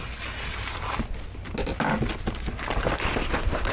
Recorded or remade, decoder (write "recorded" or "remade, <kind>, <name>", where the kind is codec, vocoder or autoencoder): recorded